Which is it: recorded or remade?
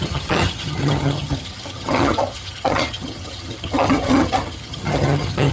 remade